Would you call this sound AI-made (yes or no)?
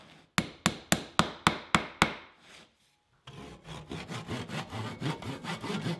no